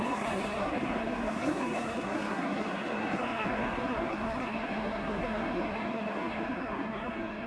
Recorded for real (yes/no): no